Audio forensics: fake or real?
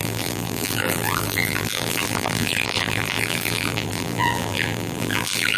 fake